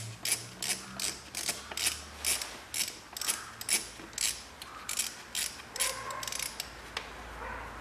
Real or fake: real